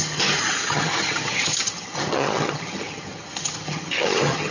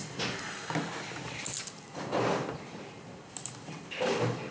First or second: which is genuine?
second